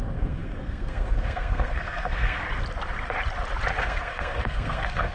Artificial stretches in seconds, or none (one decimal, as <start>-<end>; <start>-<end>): 0.0-2.4; 3.8-5.1